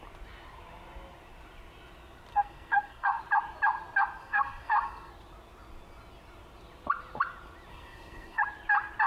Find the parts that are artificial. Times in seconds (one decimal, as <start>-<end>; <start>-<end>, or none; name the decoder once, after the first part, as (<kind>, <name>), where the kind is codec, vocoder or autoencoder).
2.3-3.2 (codec, SNAC); 4.2-5.1; 7.7-8.4